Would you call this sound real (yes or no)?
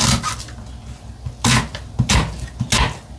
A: yes